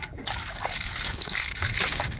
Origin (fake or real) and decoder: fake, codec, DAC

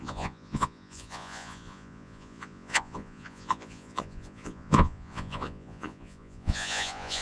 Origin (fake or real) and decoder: fake, vocoder, Vocos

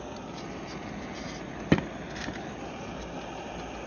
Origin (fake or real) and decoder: fake, vocoder, BigVGAN v2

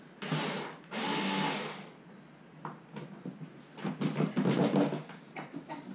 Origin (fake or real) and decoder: real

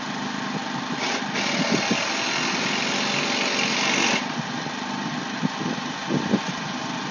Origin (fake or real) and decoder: real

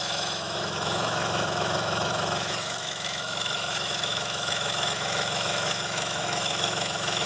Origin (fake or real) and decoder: fake, autoencoder, DAC-VAE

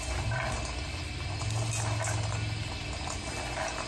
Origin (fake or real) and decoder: real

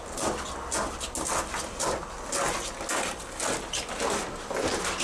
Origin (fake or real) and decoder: real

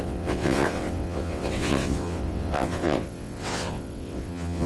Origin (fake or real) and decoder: fake, vocoder, WaveNeXt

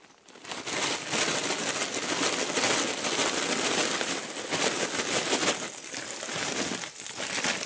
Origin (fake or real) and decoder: real